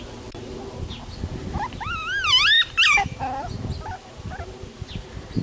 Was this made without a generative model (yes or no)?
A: yes